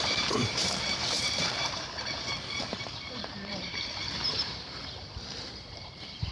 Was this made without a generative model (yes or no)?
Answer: no